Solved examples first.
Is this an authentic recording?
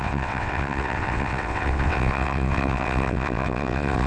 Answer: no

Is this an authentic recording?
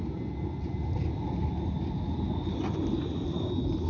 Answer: yes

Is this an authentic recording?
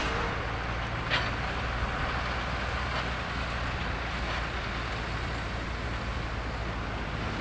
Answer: yes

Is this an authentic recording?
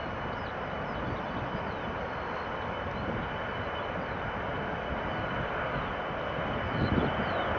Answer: yes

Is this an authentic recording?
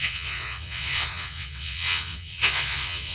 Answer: no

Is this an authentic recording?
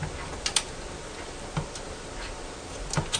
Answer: yes